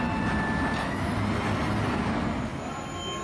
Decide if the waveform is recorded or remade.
recorded